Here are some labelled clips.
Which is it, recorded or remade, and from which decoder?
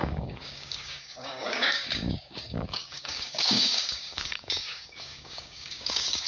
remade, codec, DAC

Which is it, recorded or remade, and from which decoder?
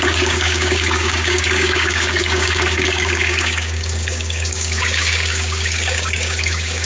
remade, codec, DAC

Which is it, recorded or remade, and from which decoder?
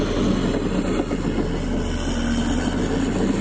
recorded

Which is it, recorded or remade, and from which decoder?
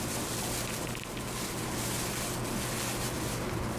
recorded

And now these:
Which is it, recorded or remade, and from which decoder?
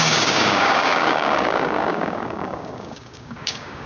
remade, codec, DAC